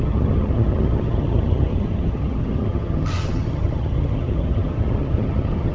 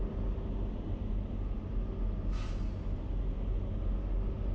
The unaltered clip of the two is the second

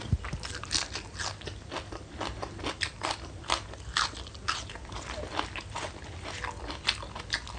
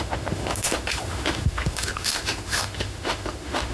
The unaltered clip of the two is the first